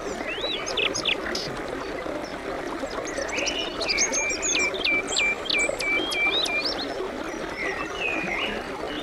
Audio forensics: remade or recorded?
recorded